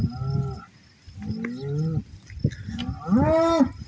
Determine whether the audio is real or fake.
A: real